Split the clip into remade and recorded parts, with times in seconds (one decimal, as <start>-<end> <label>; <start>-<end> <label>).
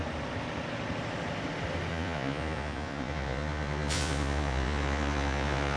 0.0-1.9 recorded; 1.9-5.8 remade